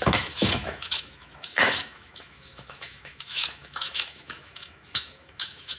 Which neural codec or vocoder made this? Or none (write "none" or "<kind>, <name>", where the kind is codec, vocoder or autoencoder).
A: autoencoder, DAC-VAE